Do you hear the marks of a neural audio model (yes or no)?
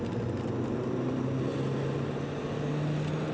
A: no